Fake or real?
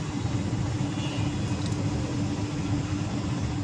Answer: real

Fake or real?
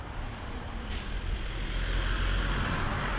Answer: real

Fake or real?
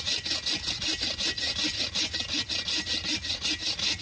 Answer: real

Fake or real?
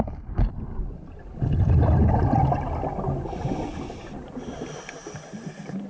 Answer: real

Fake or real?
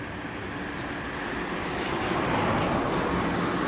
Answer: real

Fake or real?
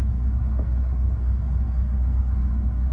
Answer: fake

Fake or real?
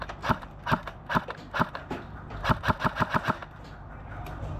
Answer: real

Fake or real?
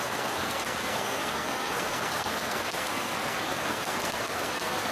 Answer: fake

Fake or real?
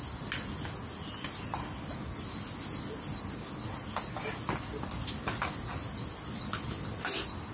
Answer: real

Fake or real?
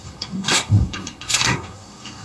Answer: fake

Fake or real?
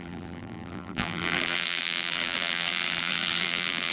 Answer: fake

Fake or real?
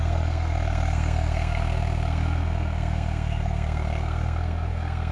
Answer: fake